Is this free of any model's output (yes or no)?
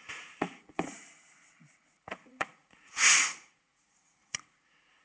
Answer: no